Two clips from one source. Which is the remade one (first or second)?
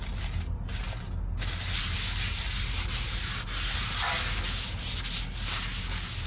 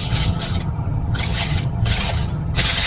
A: second